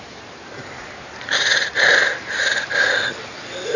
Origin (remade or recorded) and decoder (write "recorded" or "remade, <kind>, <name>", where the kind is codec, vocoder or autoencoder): recorded